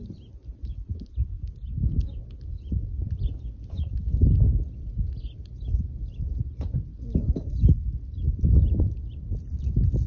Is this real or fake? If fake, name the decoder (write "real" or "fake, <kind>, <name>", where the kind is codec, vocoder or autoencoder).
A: real